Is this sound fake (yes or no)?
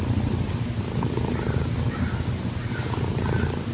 no